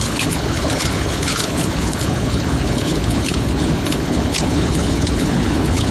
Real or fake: fake